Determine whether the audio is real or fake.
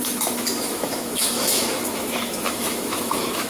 fake